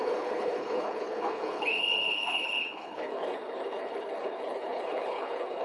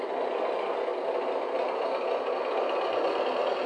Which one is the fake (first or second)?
first